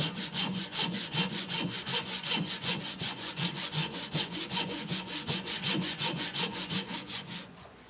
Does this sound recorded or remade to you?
remade